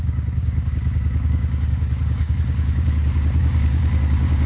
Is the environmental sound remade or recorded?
remade